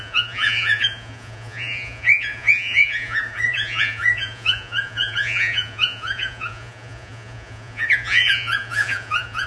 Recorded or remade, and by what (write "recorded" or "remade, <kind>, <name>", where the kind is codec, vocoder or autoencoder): remade, vocoder, Vocos